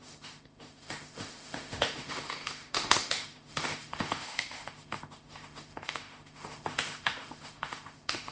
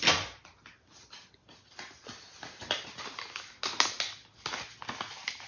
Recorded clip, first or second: second